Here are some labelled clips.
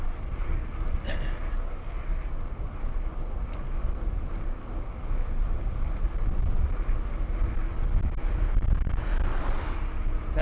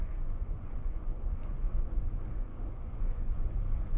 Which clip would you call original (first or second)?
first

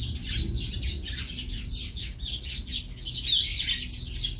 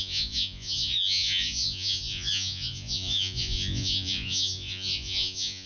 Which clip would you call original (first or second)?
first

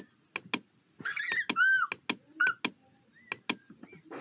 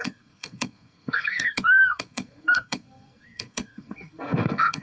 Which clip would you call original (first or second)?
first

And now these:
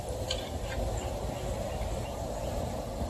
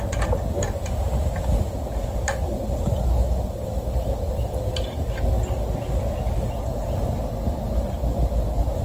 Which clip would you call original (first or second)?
second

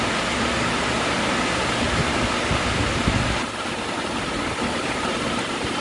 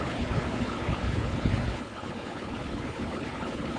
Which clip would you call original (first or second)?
first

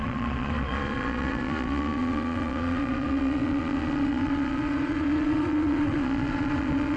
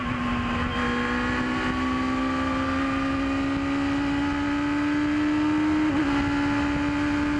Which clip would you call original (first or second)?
second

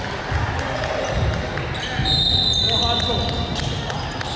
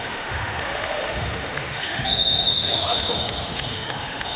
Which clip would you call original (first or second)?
first